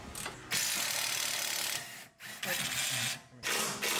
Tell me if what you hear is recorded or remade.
recorded